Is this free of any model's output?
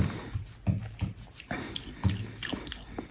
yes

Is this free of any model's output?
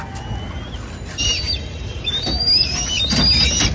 yes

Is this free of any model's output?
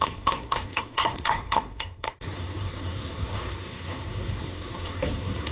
no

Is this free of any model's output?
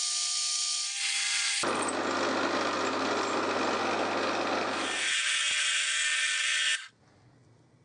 yes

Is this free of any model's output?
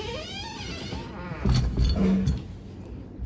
yes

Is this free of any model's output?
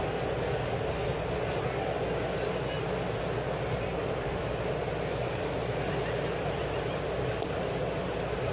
yes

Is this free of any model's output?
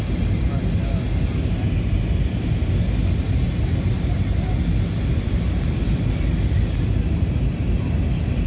yes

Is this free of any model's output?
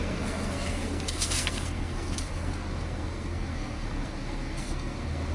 no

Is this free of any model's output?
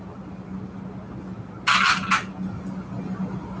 yes